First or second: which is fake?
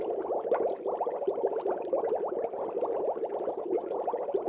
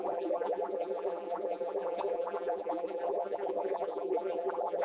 second